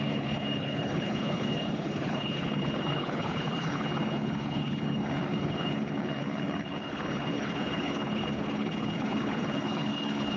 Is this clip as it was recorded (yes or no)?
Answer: no